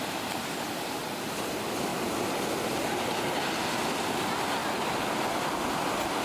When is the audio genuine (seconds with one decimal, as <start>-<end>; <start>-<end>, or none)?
0.0-6.2

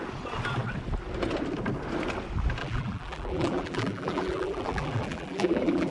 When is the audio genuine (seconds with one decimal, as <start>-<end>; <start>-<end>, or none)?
0.0-2.6